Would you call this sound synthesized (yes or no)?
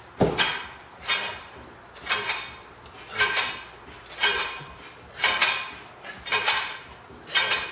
no